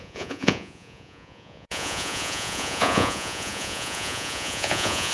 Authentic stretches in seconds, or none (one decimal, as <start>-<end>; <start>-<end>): none